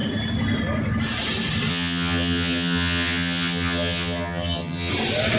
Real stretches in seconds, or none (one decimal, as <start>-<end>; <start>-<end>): 0.0-1.7; 4.9-5.4